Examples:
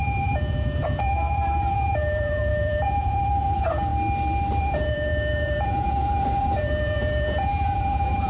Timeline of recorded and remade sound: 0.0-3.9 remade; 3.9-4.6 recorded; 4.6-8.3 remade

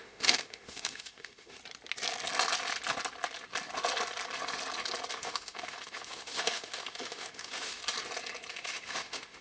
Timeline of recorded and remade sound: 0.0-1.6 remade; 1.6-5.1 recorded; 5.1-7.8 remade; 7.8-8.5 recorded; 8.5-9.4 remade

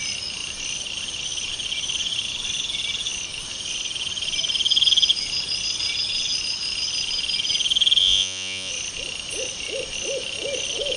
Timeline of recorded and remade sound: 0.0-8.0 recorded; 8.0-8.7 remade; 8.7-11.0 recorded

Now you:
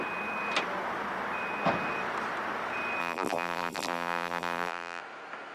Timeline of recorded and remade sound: 0.0-3.0 recorded; 3.0-5.0 remade; 5.0-5.5 recorded

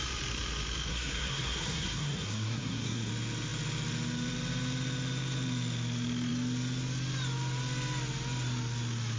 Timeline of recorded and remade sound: 0.0-0.9 recorded; 0.9-3.1 remade; 3.1-9.2 recorded

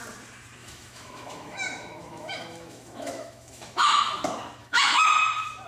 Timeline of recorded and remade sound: 0.0-0.6 recorded; 0.6-4.0 remade; 4.0-4.6 recorded; 4.6-5.1 remade; 5.1-5.7 recorded